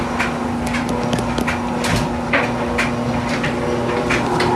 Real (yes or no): yes